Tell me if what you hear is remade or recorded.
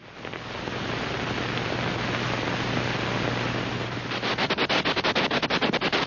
recorded